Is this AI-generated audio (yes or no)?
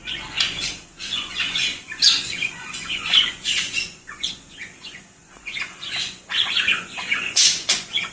yes